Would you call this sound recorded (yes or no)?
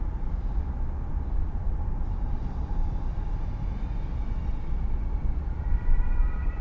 no